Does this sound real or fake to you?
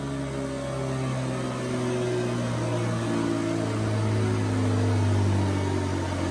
real